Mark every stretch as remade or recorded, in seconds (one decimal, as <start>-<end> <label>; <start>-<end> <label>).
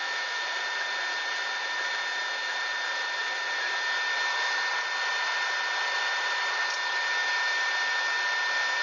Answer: 0.0-0.6 remade; 0.6-8.8 recorded